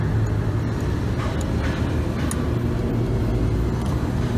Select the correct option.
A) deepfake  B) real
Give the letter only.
B